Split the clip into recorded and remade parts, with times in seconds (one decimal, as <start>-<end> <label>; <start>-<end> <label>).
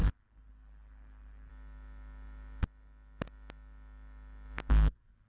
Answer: 0.0-1.5 remade; 1.5-4.7 recorded; 4.7-5.3 remade